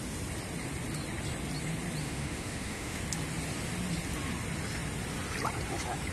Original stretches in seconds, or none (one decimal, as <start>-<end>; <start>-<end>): 0.0-2.0; 3.0-6.1